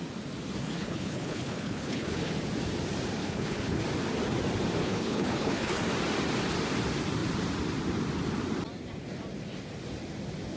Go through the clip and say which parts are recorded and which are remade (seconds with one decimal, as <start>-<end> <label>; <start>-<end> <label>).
0.0-0.6 recorded; 0.6-2.3 remade; 2.3-3.2 recorded; 3.2-3.8 remade; 3.8-4.8 recorded; 4.8-5.8 remade; 5.8-10.6 recorded